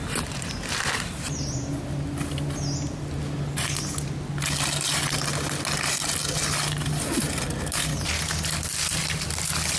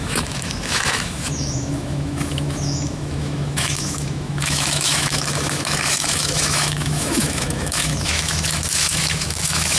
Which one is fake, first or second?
second